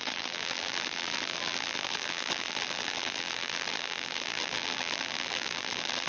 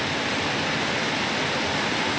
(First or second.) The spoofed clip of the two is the first